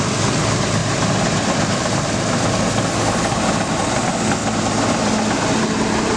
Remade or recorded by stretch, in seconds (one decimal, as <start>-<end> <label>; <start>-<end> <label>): 0.0-0.8 recorded; 0.8-2.5 remade; 2.5-4.4 recorded; 4.4-5.6 remade; 5.6-6.2 recorded